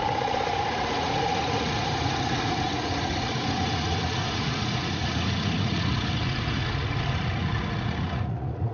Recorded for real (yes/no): no